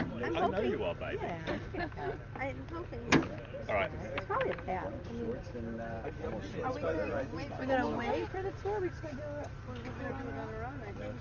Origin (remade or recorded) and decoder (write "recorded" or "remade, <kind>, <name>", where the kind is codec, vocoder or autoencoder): recorded